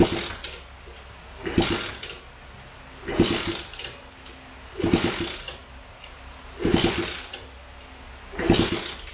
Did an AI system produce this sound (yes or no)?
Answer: no